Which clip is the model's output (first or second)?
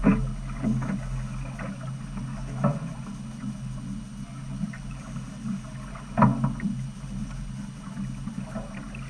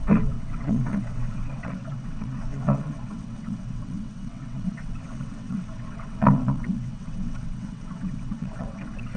second